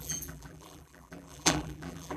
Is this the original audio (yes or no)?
no